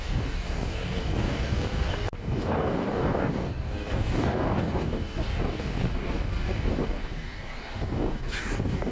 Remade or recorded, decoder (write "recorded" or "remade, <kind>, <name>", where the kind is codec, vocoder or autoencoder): remade, codec, DAC